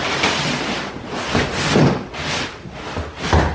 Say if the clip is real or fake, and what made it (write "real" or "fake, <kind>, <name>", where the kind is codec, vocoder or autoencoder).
real